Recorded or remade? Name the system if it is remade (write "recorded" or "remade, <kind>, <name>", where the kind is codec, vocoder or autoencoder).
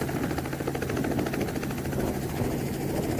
recorded